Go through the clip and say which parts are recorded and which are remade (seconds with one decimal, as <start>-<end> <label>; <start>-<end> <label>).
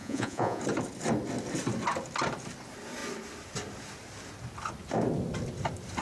0.0-0.6 remade; 0.6-6.0 recorded